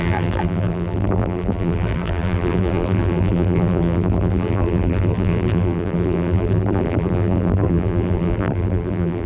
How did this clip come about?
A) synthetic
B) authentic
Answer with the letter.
A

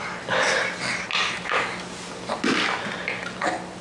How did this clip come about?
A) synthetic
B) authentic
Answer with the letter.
B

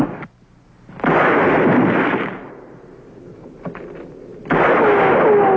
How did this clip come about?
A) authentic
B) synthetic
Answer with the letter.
A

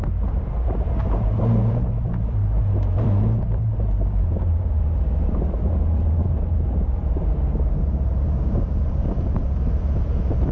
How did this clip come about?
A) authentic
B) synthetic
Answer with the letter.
B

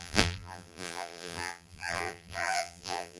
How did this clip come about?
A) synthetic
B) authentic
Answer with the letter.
A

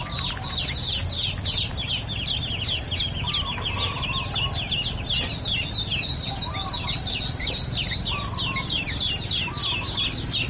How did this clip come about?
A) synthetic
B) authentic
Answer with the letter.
B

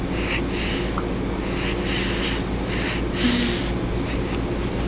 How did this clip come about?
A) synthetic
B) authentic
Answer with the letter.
B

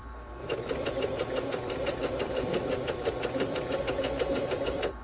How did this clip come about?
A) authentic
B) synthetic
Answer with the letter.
B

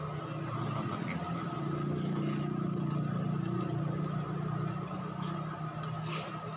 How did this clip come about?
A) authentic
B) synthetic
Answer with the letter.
A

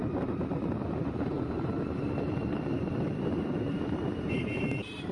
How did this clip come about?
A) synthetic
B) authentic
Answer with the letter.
A